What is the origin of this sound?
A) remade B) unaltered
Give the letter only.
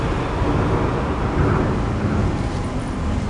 B